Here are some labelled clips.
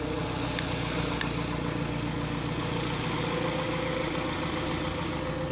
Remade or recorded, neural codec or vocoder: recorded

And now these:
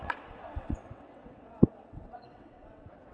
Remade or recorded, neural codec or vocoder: remade, vocoder, WaveNeXt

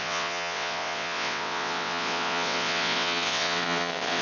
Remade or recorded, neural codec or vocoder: remade, vocoder, WaveNeXt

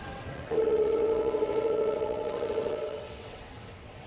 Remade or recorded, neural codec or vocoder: remade, vocoder, WaveNeXt